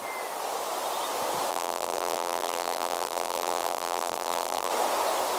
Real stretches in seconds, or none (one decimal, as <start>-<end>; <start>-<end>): 0.0-1.5; 4.7-5.4